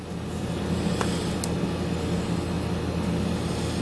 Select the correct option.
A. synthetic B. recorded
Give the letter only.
B